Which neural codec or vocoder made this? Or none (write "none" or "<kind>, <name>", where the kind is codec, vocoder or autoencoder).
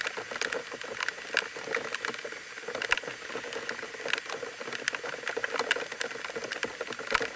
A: none